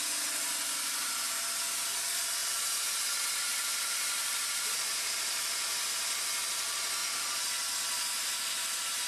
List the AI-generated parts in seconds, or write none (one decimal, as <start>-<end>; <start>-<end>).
2.4-3.0; 3.5-5.9